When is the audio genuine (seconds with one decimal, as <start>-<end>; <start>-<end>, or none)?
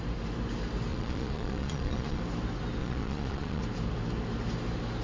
0.0-0.9; 2.2-2.8; 3.6-5.0